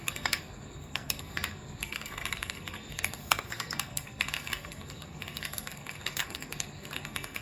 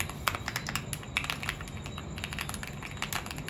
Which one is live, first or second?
second